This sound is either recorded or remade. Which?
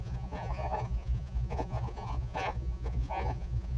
remade